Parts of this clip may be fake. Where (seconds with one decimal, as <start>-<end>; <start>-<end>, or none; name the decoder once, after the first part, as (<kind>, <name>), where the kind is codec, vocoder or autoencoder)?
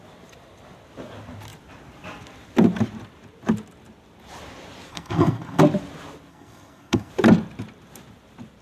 4.9-5.6 (codec, SNAC); 6.3-7.1